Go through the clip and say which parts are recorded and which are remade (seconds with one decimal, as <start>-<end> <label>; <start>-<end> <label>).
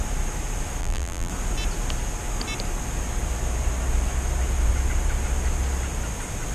0.0-0.8 recorded; 0.8-1.3 remade; 1.3-6.5 recorded